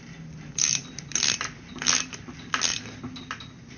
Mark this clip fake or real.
real